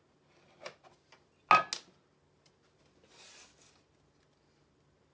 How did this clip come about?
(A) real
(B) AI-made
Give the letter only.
A